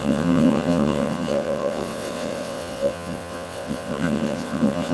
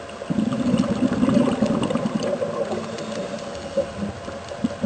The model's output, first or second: first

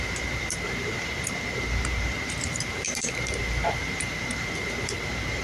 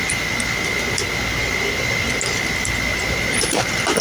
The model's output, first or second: first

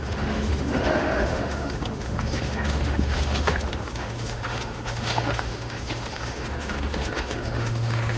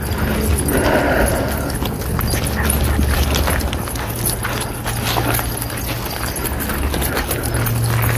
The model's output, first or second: first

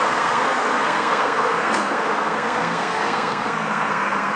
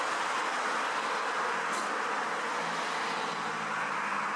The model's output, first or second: first